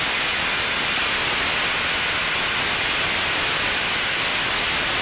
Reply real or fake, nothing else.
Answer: real